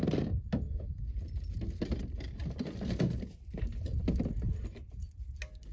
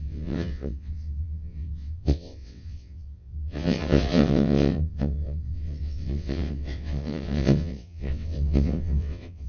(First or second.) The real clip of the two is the first